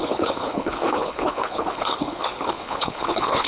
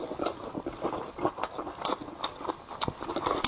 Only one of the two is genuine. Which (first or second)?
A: second